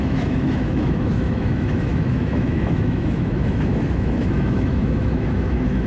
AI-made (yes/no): yes